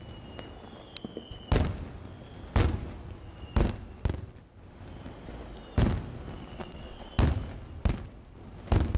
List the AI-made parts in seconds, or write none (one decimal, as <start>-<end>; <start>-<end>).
6.6-7.1